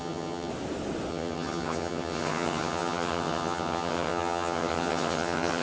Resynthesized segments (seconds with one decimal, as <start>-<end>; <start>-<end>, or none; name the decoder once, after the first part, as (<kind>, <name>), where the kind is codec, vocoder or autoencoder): 0.0-0.5 (vocoder, HiFi-GAN); 1.1-5.6